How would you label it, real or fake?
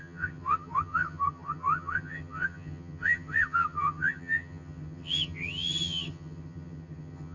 fake